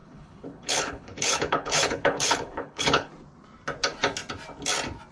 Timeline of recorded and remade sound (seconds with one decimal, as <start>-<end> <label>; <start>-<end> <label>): 0.0-3.1 remade; 3.1-5.1 recorded